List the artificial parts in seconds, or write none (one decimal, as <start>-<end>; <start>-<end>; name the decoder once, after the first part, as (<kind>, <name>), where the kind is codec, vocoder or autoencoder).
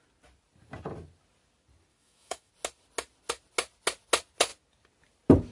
1.9-2.5 (autoencoder, DAC-VAE)